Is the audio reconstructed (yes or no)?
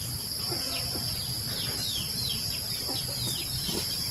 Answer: no